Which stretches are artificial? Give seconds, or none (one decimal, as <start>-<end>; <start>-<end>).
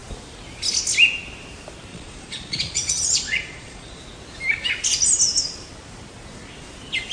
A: 1.9-4.0